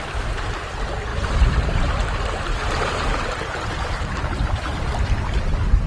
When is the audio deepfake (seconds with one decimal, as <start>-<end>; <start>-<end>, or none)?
1.1-1.9

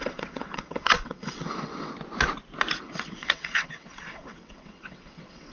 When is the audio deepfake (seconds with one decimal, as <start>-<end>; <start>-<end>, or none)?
0.0-1.9; 2.8-5.5

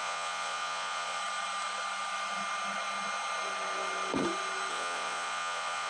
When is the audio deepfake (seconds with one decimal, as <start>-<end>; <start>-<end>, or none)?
0.0-1.2; 4.7-5.9

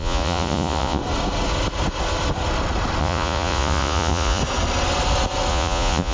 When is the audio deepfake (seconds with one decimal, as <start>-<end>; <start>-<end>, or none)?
0.0-1.0; 3.0-4.4; 5.5-6.1

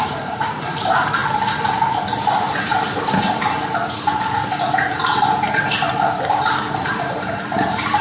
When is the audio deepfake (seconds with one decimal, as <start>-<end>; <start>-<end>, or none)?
0.0-1.2; 2.2-2.7; 6.8-8.0

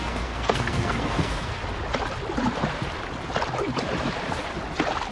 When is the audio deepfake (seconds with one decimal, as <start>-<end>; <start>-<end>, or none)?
0.0-1.6